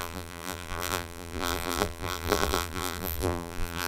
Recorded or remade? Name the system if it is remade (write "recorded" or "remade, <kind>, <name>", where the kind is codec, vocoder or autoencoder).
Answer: remade, vocoder, BigVGAN v2